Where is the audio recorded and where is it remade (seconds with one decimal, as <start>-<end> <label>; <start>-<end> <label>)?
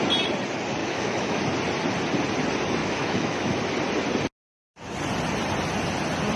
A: 0.0-0.8 recorded; 0.8-1.4 remade; 1.4-2.8 recorded; 2.8-3.6 remade; 3.6-6.4 recorded